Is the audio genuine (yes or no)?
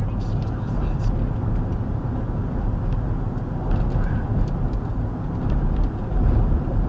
yes